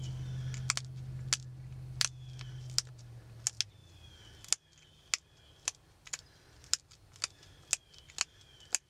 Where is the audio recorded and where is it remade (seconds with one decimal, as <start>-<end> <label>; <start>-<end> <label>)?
0.0-8.9 recorded